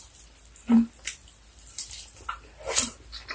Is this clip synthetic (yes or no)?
yes